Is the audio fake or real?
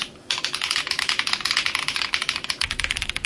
fake